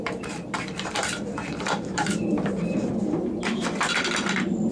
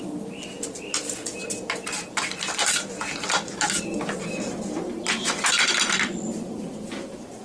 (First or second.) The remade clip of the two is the first